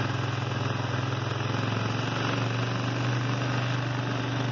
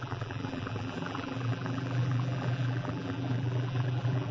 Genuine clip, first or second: first